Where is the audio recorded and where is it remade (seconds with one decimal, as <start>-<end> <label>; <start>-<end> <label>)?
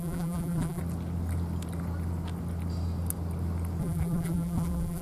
0.0-0.8 remade; 0.8-3.8 recorded; 3.8-5.0 remade